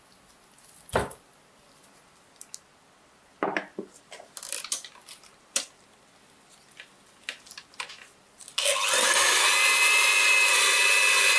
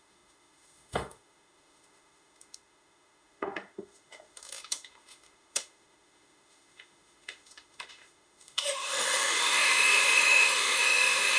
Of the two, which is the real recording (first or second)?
first